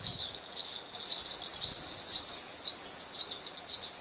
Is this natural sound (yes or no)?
no